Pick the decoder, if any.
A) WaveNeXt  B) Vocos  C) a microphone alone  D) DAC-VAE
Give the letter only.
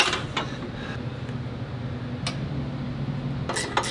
C